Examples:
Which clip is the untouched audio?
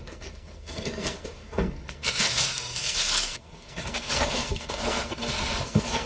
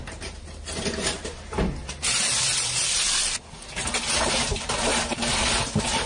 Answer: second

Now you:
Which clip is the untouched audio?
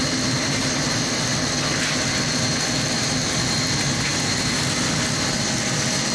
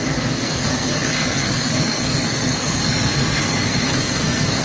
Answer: first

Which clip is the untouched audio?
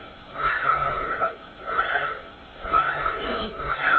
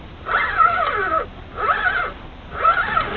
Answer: second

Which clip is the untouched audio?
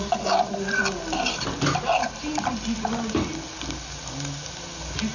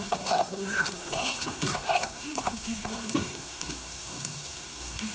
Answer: first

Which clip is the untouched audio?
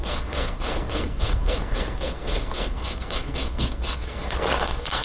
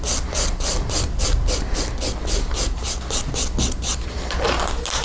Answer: second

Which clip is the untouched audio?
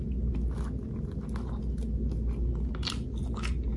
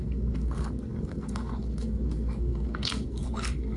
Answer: first